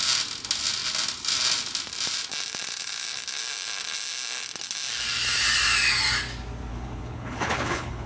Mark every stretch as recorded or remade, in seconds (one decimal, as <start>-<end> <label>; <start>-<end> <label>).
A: 0.0-6.7 recorded; 6.7-8.1 remade